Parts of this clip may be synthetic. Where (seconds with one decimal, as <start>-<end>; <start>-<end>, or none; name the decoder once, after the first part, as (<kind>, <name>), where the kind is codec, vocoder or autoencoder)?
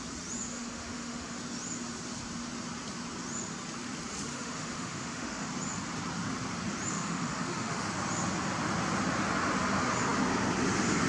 0.5-1.4 (autoencoder, DAC-VAE); 4.3-5.5; 6.9-7.9